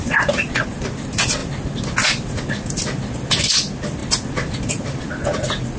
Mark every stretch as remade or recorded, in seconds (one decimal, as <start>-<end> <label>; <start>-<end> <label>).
0.0-5.8 recorded